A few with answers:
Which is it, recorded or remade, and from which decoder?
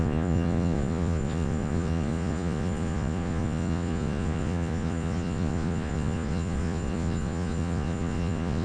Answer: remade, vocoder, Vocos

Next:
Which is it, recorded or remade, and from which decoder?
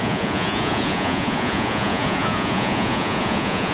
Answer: remade, vocoder, Vocos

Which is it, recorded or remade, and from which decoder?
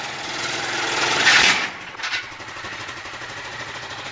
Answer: remade, vocoder, Vocos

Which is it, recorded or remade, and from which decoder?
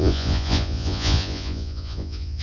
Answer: remade, vocoder, Vocos